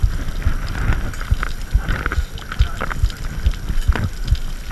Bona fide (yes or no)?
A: yes